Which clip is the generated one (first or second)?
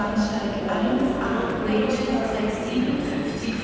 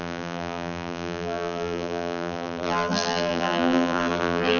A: second